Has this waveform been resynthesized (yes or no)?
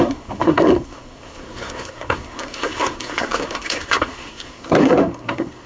yes